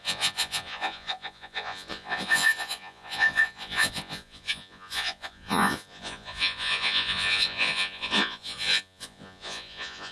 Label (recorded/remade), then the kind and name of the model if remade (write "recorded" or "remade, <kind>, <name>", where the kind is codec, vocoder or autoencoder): remade, vocoder, Vocos